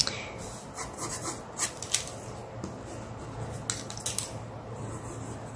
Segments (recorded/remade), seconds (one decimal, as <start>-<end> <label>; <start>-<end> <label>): 0.0-5.6 recorded